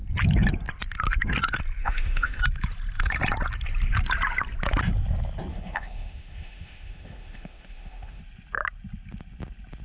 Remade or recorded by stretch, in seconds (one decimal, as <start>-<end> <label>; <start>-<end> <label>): 0.0-1.8 recorded; 1.8-2.4 remade; 2.4-5.5 recorded; 5.5-8.2 remade; 8.2-9.8 recorded